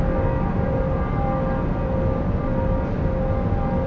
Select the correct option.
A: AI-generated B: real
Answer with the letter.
B